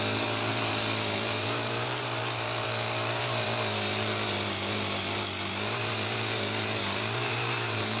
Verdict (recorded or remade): remade